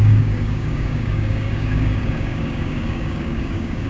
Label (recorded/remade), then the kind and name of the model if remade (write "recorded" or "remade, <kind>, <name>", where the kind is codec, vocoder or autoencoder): remade, codec, DAC